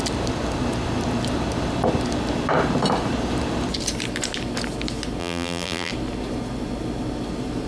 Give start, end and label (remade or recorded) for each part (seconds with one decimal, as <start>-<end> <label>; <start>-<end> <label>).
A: 0.0-5.2 recorded; 5.2-5.9 remade; 5.9-7.7 recorded